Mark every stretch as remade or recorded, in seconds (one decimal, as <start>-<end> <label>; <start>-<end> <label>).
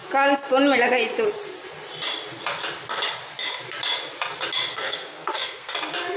0.0-4.7 recorded; 4.7-5.7 remade; 5.7-6.2 recorded